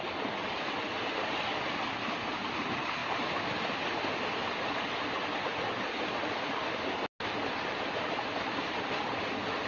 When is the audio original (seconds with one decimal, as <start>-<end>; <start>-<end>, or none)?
0.0-9.7